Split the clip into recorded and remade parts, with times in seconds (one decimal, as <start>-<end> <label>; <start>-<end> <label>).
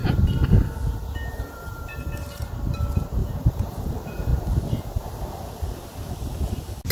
0.0-1.3 recorded; 1.3-2.5 remade; 2.5-3.2 recorded; 3.2-3.9 remade; 3.9-6.9 recorded